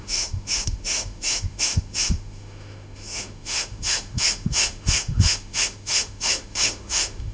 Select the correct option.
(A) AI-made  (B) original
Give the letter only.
A